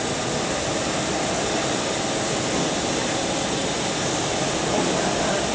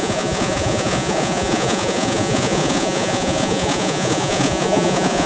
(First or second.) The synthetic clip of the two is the second